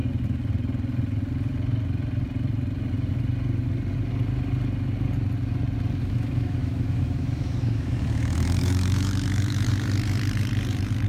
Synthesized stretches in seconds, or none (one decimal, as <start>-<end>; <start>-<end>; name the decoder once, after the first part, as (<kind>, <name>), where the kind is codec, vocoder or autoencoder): 6.0-9.7 (autoencoder, DAC-VAE)